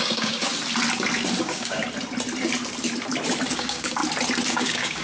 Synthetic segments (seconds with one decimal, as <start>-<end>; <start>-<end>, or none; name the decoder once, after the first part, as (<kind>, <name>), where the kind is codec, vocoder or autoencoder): 0.0-0.5 (codec, DAC); 1.4-1.8; 3.5-4.0; 4.5-5.0